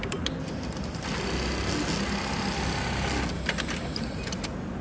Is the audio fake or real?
real